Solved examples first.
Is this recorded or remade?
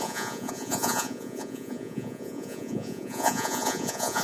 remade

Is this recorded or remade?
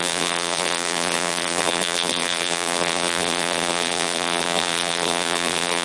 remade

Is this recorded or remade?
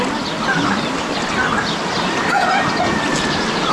recorded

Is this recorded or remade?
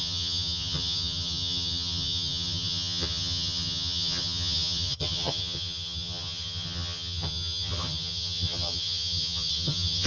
remade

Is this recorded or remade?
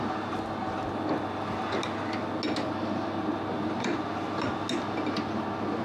recorded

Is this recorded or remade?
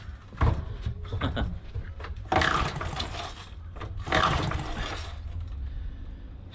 recorded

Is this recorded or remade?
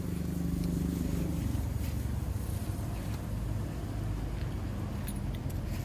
recorded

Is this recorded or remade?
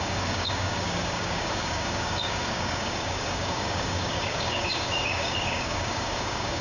remade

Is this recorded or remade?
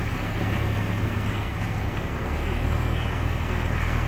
remade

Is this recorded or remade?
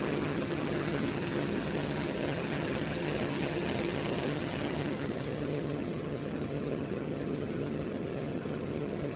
remade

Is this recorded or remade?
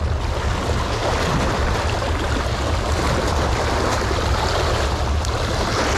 recorded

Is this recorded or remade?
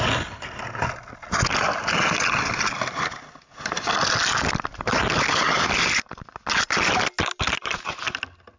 recorded